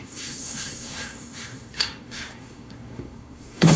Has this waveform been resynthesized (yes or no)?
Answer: yes